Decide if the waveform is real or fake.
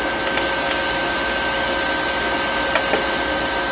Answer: real